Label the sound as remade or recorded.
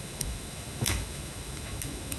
remade